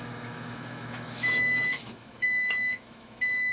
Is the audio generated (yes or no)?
yes